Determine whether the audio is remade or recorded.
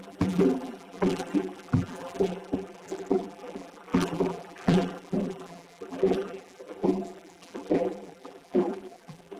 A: remade